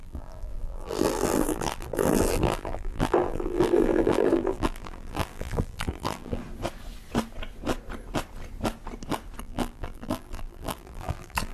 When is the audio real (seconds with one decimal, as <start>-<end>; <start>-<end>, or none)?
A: 6.4-9.4